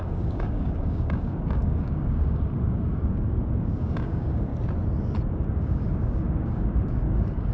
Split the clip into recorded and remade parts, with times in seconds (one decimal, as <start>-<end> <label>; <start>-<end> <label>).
0.0-4.5 remade; 4.5-5.3 recorded; 5.3-7.5 remade

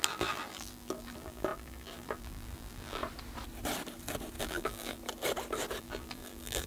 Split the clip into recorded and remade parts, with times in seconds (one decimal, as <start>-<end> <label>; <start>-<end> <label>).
0.0-3.0 remade; 3.0-4.4 recorded; 4.4-5.0 remade; 5.0-5.8 recorded; 5.8-6.7 remade

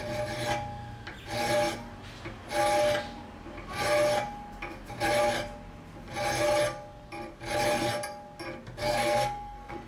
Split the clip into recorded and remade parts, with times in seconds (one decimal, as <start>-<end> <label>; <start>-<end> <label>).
0.0-8.8 recorded; 8.8-9.9 remade